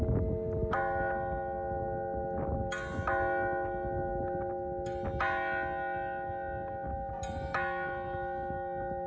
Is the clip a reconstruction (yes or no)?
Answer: no